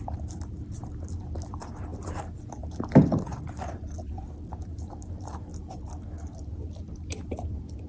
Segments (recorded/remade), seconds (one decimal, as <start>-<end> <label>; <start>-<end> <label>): 0.0-1.9 remade; 1.9-3.0 recorded; 3.0-5.5 remade; 5.5-6.7 recorded; 6.7-7.9 remade